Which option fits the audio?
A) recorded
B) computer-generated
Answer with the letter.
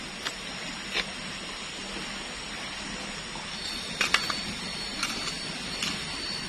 A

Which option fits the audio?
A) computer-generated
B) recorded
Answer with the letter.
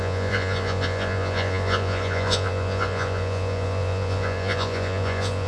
A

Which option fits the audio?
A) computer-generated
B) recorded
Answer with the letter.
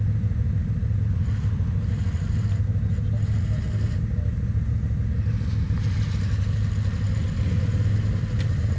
B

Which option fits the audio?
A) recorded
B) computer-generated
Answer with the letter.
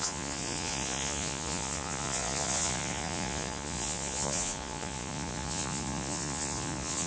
B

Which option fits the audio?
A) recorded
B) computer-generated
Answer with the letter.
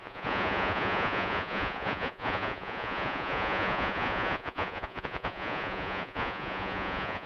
B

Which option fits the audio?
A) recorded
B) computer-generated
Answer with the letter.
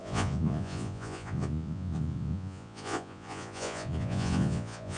B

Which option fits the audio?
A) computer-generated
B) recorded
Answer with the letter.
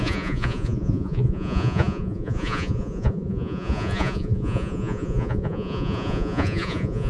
A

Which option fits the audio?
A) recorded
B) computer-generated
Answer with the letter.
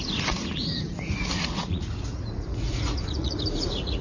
B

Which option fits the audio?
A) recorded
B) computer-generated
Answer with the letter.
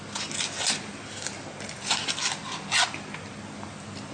A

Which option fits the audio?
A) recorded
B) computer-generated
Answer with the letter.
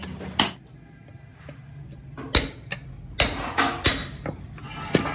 A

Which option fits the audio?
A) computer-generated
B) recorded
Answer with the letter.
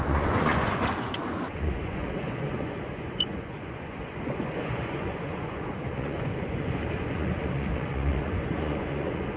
A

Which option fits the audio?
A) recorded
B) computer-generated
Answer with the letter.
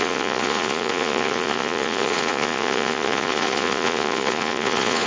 B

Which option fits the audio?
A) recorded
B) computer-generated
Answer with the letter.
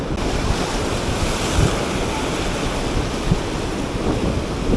A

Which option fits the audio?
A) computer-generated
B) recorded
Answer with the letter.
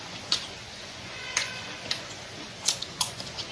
A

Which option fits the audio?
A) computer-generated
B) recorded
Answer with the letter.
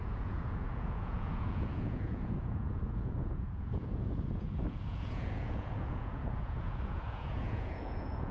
A